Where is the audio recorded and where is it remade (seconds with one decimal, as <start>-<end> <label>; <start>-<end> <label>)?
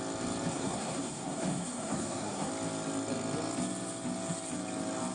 0.0-0.5 recorded; 0.5-2.5 remade; 2.5-5.1 recorded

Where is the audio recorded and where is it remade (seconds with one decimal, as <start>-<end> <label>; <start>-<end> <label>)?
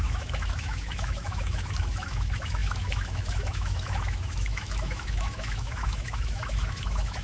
0.0-7.2 remade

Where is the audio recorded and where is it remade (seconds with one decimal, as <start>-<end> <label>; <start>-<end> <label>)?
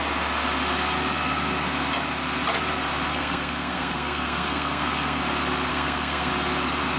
0.0-3.1 recorded; 3.1-5.2 remade; 5.2-5.7 recorded; 5.7-6.3 remade; 6.3-7.0 recorded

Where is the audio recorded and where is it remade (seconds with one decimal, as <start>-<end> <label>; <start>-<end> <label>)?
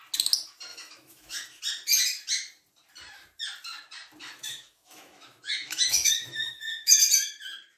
0.0-0.7 recorded; 0.7-1.6 remade; 1.6-4.2 recorded; 4.2-7.0 remade; 7.0-7.8 recorded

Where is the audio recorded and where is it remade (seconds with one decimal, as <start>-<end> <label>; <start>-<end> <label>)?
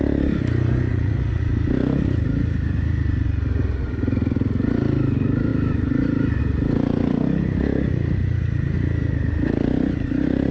0.0-0.9 recorded; 0.9-1.4 remade; 1.4-10.5 recorded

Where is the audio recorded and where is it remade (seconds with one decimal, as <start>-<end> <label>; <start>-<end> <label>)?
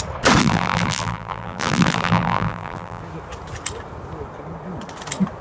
0.0-0.4 recorded; 0.4-3.0 remade; 3.0-5.4 recorded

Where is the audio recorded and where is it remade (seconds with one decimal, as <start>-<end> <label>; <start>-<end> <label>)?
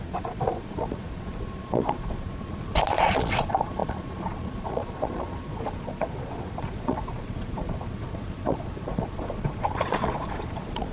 0.0-10.9 remade